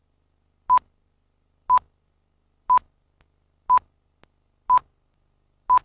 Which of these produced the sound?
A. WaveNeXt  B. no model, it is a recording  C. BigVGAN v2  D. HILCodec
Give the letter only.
B